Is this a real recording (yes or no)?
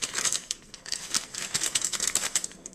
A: no